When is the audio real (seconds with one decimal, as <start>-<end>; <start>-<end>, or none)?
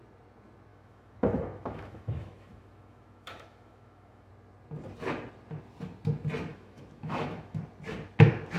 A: 0.0-0.7; 4.3-6.5; 7.6-8.6